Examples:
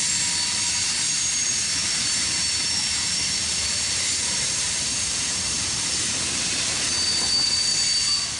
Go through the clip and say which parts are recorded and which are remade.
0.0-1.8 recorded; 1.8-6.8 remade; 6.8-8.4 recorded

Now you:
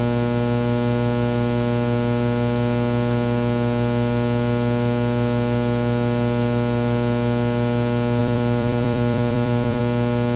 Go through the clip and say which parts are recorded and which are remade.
0.0-8.2 recorded; 8.2-9.8 remade; 9.8-10.4 recorded

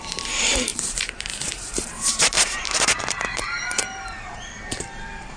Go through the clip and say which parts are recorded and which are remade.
0.0-5.4 remade

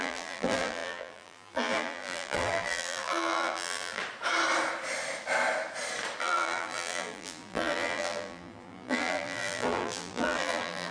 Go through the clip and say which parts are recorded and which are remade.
0.0-4.0 remade; 4.0-6.2 recorded; 6.2-10.9 remade

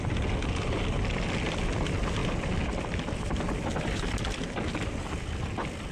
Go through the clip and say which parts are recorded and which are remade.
0.0-5.9 recorded

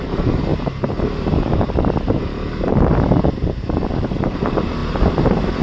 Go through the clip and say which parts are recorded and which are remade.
0.0-0.5 remade; 0.5-3.9 recorded; 3.9-5.6 remade

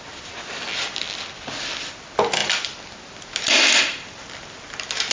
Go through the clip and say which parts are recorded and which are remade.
0.0-5.1 recorded

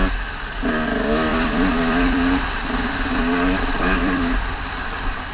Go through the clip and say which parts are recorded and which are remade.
0.0-1.3 recorded; 1.3-4.5 remade; 4.5-5.3 recorded